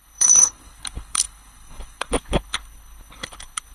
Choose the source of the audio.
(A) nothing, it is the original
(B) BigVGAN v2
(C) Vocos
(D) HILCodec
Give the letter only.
D